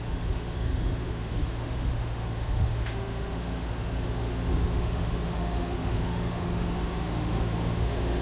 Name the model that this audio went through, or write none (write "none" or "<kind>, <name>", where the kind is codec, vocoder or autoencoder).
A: autoencoder, DAC-VAE